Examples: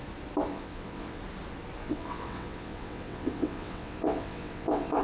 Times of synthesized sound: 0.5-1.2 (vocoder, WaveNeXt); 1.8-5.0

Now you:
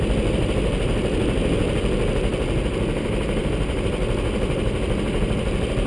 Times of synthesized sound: none

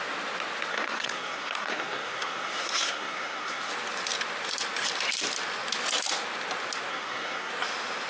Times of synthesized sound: 0.7-3.7 (codec, SNAC); 6.9-7.5

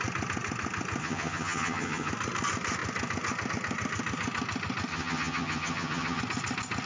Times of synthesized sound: 1.0-2.1 (vocoder, HiFi-GAN); 4.9-6.2

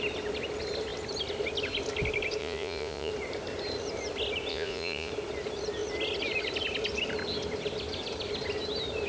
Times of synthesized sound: 2.4-3.1 (vocoder, Vocos); 4.5-5.1

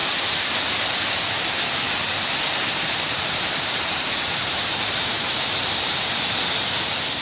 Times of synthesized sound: 2.0-6.1 (vocoder, BigVGAN v2)

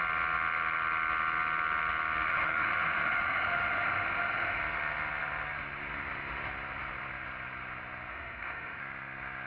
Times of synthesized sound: 2.3-4.6 (autoencoder, DAC-VAE); 8.1-8.8

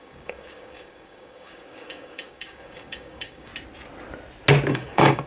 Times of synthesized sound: 0.0-3.5 (codec, DAC); 4.7-5.3